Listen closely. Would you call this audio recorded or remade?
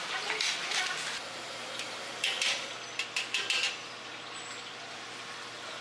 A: recorded